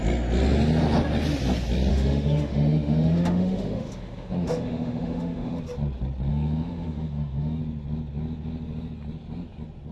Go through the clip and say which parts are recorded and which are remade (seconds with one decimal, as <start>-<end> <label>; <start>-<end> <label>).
0.0-1.9 recorded; 1.9-5.6 remade; 5.6-6.3 recorded; 6.3-7.6 remade; 7.6-9.9 recorded

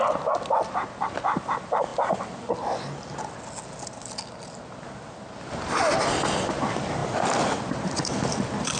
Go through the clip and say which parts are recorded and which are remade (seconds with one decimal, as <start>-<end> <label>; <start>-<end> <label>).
0.0-1.9 remade; 1.9-5.4 recorded; 5.4-8.8 remade

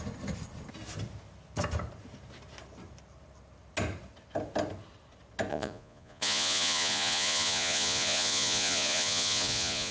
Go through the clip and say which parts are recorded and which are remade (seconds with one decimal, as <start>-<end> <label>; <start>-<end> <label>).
0.0-5.5 recorded; 5.5-9.9 remade